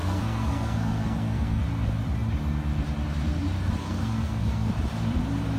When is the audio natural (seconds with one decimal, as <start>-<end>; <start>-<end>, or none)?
1.6-3.8; 4.7-5.6